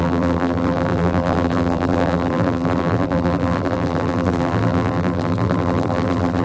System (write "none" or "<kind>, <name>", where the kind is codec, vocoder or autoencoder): vocoder, BigVGAN v2